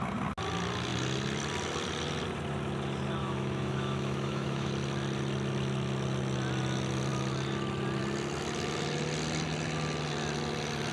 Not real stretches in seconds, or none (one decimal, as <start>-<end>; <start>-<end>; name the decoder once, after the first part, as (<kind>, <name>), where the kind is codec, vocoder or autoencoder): 3.2-4.7 (autoencoder, DAC-VAE)